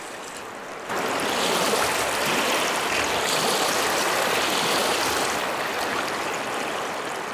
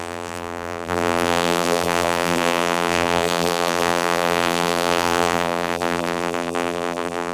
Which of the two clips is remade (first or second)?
second